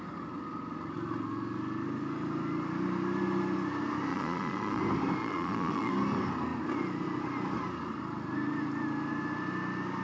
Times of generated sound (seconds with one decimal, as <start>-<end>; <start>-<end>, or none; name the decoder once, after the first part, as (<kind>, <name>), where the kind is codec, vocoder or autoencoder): 4.1-4.8 (vocoder, Vocos); 5.2-5.9